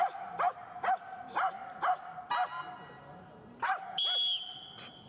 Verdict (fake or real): real